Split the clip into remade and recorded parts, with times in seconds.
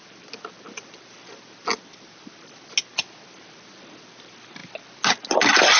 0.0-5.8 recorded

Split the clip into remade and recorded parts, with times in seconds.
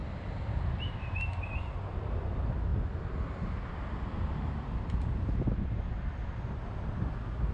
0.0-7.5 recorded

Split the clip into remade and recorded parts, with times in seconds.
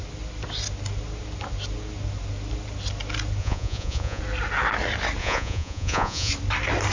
0.0-3.4 recorded; 3.4-4.2 remade; 4.2-5.2 recorded; 5.2-6.3 remade; 6.3-6.9 recorded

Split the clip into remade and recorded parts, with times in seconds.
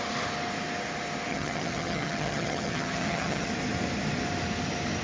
0.0-1.3 recorded; 1.3-3.5 remade; 3.5-5.0 recorded